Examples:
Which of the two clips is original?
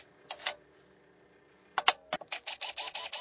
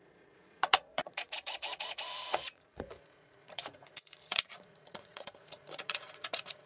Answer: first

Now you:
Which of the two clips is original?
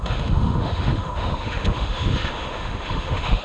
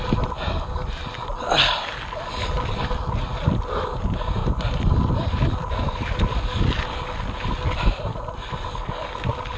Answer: second